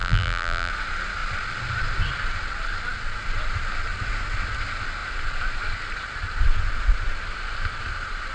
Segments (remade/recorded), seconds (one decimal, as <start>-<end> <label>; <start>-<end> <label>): 0.0-0.7 remade; 0.7-8.3 recorded